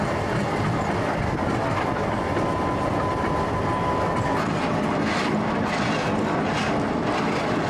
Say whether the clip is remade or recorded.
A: recorded